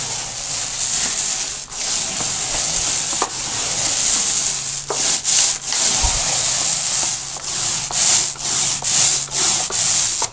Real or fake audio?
real